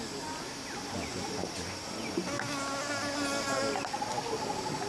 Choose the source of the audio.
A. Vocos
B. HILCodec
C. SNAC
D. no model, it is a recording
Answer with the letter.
D